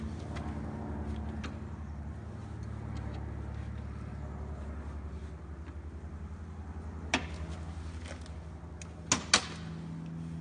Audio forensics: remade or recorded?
recorded